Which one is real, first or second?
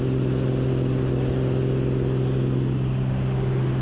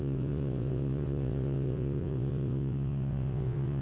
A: first